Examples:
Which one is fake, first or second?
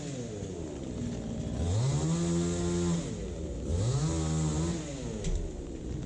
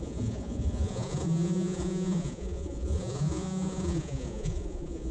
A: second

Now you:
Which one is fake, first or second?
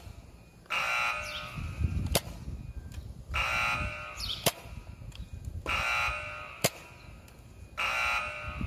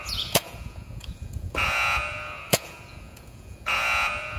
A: second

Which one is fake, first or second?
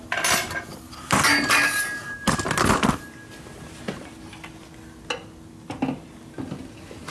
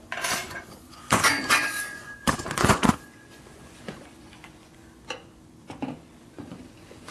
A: second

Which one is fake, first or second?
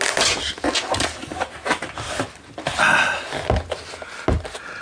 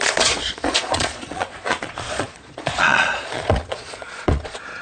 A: second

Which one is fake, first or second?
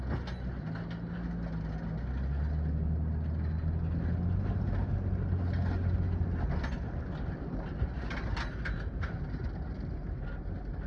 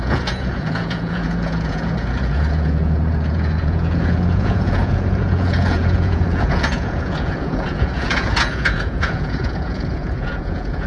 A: second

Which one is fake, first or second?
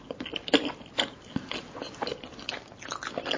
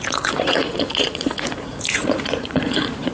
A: second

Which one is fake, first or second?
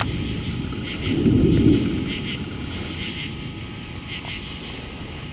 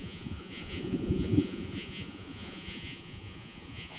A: second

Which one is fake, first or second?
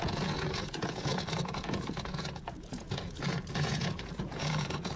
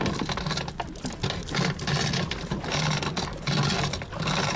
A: first